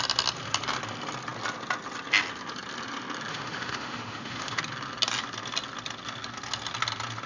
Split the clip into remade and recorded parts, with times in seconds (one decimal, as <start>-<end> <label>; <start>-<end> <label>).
0.0-3.3 recorded; 3.3-4.6 remade; 4.6-7.3 recorded